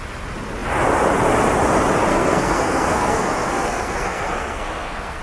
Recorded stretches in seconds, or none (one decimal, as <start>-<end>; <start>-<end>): 0.0-2.1